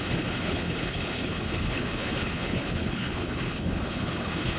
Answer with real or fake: fake